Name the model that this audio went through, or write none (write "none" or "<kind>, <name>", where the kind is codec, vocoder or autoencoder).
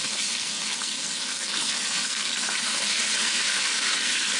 codec, SNAC